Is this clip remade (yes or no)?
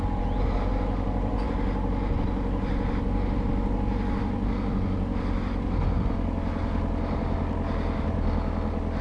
no